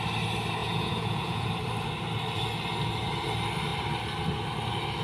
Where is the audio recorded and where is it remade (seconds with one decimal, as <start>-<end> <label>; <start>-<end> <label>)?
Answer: 0.0-0.6 recorded; 0.6-1.5 remade; 1.5-5.0 recorded